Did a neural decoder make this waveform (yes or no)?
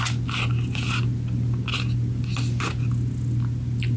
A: no